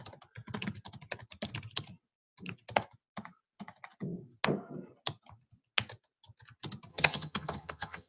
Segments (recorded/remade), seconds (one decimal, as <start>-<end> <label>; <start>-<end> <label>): 0.0-6.9 recorded; 6.9-8.1 remade